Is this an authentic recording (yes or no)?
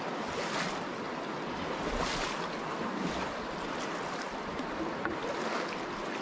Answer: yes